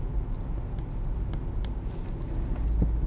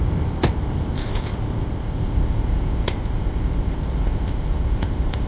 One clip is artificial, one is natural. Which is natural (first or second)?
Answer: first